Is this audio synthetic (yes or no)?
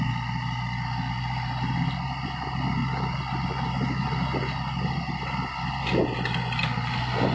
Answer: no